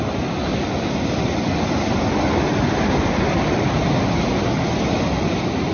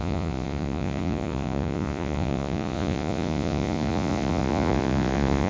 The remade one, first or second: second